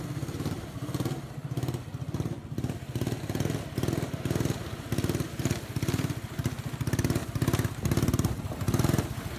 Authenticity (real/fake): real